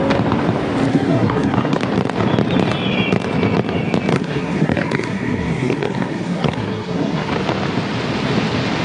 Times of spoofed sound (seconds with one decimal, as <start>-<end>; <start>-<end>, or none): 0.9-1.8; 4.1-7.3